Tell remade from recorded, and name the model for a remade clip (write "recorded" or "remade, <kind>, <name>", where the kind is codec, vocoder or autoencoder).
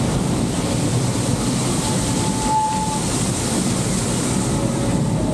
recorded